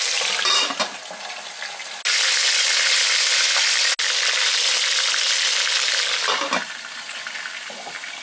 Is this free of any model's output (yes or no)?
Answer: yes